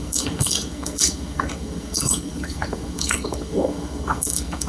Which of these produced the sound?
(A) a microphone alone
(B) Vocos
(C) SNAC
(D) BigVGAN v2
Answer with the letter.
C